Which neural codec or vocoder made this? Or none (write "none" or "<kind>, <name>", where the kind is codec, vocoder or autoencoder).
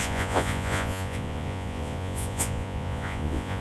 vocoder, Vocos